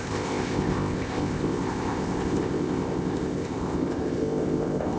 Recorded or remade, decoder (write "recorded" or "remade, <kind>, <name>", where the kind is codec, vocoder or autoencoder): remade, codec, ZipCodec